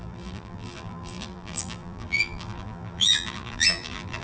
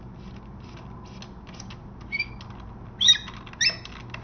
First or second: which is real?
second